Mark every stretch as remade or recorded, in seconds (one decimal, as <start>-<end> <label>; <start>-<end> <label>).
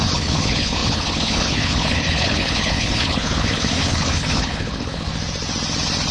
0.0-5.1 remade; 5.1-6.1 recorded